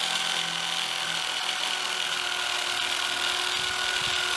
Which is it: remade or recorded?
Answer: recorded